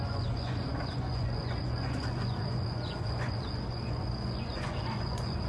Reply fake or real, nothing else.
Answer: fake